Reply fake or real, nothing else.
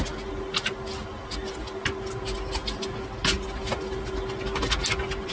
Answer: real